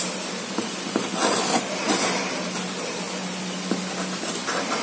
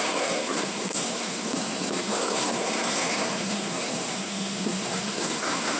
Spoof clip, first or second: second